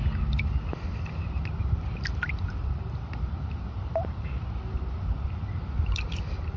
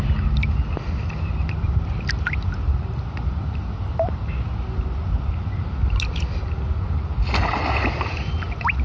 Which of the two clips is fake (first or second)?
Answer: first